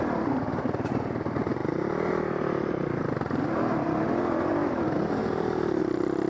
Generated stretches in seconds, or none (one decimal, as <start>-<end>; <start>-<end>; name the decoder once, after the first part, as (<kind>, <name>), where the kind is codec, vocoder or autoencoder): 0.0-6.3 (vocoder, BigVGAN v2)